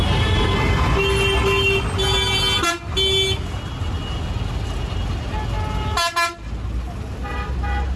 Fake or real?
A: real